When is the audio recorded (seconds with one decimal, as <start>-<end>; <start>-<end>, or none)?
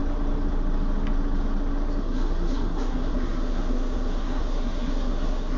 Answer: 0.0-2.0